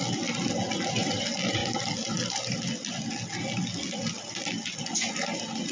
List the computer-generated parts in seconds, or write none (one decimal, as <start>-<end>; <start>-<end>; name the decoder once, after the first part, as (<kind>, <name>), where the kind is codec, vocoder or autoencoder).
none